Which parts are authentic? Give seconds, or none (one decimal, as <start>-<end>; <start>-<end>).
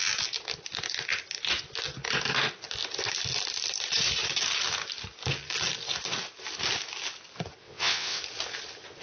0.0-7.6; 8.2-9.0